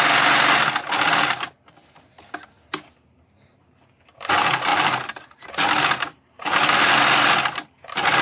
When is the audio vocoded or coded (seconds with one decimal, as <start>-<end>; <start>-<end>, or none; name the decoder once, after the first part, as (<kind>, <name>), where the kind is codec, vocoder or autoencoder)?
none